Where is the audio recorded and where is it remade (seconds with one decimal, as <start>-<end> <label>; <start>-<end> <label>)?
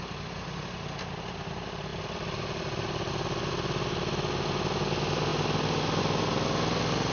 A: 0.0-7.1 recorded